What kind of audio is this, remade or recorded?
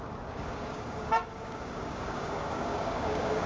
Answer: remade